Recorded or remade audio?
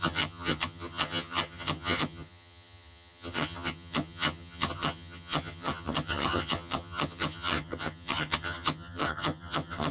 remade